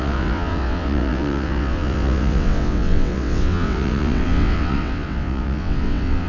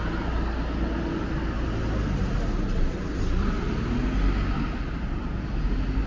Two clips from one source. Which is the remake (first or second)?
first